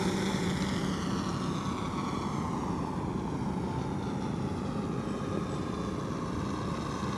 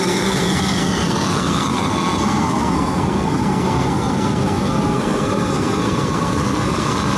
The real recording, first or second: first